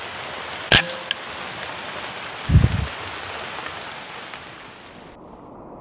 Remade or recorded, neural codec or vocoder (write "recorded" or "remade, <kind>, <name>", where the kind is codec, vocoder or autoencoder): recorded